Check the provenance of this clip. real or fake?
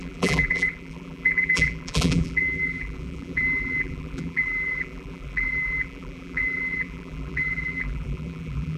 fake